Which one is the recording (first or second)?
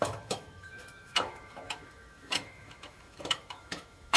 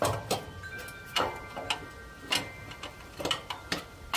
second